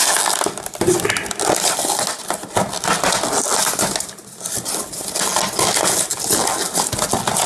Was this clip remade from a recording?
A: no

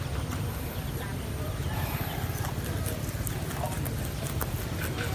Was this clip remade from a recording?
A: no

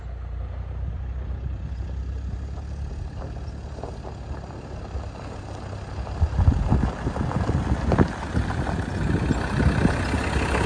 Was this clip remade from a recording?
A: no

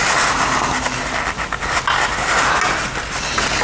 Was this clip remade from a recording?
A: no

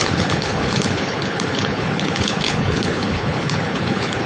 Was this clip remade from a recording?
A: yes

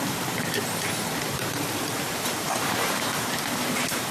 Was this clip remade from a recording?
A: yes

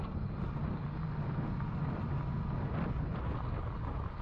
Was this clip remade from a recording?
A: no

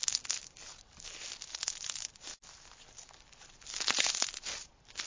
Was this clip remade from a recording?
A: no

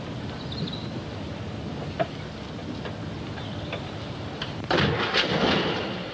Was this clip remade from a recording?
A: no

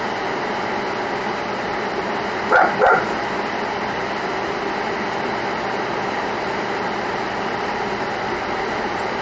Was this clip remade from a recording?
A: yes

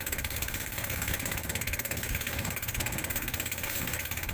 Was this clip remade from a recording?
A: yes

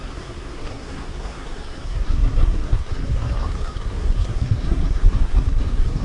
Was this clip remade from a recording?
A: yes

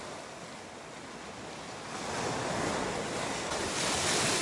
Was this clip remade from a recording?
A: no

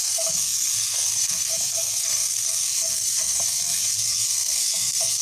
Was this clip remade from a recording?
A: yes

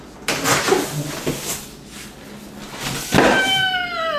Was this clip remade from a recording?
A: no